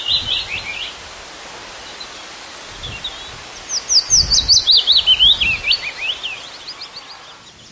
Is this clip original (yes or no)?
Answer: yes